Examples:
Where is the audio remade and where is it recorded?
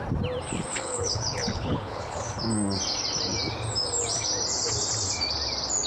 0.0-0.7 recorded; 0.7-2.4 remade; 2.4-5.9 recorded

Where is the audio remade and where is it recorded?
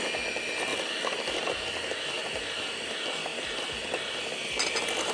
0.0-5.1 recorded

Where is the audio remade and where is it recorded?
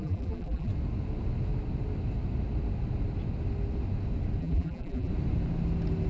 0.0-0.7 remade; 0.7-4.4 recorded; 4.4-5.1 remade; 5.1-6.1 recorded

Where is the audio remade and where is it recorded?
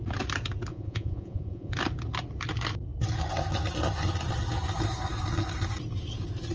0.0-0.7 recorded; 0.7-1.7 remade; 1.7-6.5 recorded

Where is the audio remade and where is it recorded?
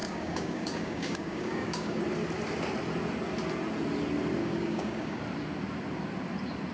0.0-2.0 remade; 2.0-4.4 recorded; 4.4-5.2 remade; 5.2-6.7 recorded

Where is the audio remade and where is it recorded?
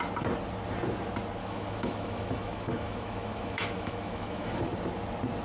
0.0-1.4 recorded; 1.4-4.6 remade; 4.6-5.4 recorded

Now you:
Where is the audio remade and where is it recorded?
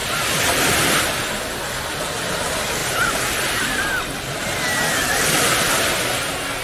0.0-6.6 recorded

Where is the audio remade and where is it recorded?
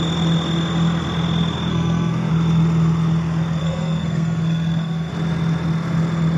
0.0-1.7 recorded; 1.7-2.3 remade; 2.3-3.6 recorded; 3.6-5.1 remade; 5.1-6.4 recorded